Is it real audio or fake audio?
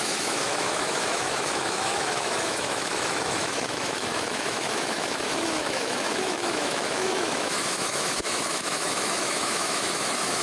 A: fake